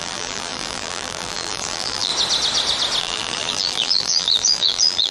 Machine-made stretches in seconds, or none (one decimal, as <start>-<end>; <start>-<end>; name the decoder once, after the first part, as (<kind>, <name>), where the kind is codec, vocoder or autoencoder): 0.0-2.1 (vocoder, BigVGAN v2); 3.0-5.1